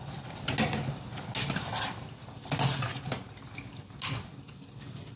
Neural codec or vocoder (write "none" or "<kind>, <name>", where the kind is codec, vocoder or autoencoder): none